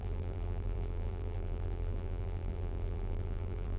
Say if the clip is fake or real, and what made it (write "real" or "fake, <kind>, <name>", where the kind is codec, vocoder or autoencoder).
fake, vocoder, BigVGAN v2